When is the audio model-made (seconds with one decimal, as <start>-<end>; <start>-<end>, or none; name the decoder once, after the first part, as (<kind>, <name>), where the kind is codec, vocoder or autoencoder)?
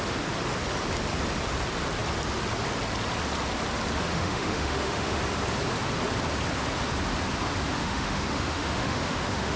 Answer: 4.1-5.2 (autoencoder, DAC-VAE); 7.8-9.6